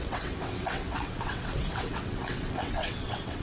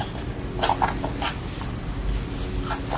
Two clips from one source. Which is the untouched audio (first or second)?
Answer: second